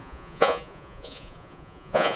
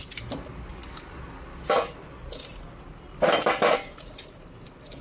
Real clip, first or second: second